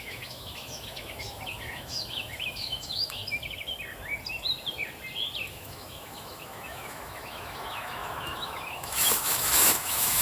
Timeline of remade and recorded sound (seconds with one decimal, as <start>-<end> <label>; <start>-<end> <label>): 0.0-3.2 remade; 3.2-5.5 recorded; 5.5-10.2 remade